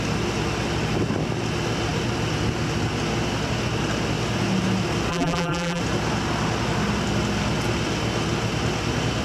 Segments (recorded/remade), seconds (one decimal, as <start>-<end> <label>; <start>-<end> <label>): 0.0-5.1 recorded; 5.1-5.8 remade; 5.8-9.2 recorded